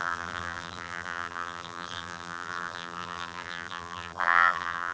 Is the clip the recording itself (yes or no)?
no